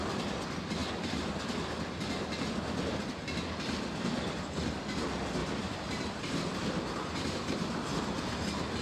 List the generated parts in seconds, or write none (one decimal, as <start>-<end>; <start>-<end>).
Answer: 5.4-6.5